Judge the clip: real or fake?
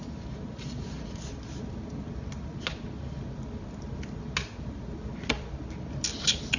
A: real